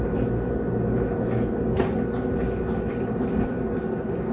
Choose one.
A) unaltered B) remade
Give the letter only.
A